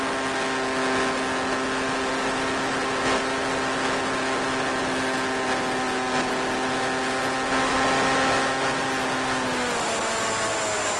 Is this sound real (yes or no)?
yes